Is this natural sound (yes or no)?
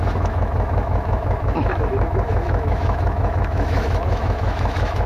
no